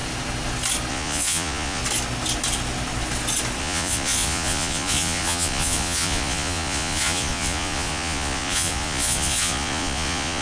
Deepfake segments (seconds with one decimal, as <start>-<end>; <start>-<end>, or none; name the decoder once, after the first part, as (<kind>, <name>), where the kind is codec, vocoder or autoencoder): 0.9-1.8 (vocoder, Vocos); 3.6-10.4